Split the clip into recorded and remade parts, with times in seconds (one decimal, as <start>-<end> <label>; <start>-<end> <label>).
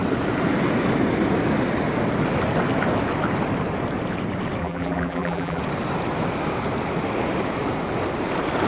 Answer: 0.0-4.6 recorded; 4.6-5.6 remade; 5.6-8.7 recorded